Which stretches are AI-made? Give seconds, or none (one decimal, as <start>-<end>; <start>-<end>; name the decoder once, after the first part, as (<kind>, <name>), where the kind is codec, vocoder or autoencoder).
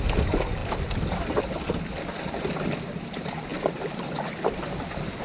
none